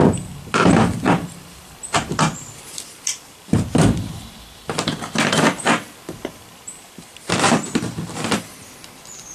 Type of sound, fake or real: fake